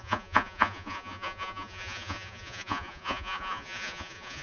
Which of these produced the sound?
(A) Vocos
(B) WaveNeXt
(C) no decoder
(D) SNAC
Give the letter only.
A